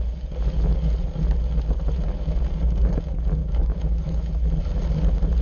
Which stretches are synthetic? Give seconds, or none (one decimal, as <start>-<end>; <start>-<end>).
3.4-4.3